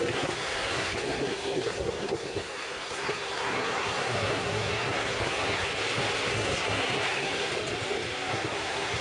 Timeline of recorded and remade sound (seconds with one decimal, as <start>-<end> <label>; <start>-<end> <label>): 0.0-5.7 remade; 5.7-6.3 recorded; 6.3-7.5 remade; 7.5-8.3 recorded; 8.3-9.0 remade